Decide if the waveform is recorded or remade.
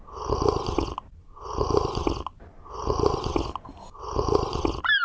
recorded